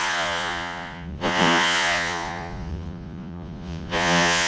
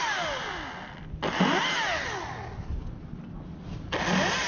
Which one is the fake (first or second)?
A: first